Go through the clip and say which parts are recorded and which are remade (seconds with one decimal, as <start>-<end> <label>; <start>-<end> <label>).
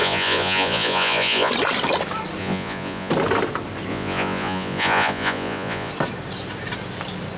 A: 0.0-1.5 remade; 1.5-2.4 recorded; 2.4-3.1 remade; 3.1-3.9 recorded; 3.9-5.9 remade; 5.9-7.4 recorded